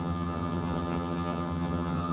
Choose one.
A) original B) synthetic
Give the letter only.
B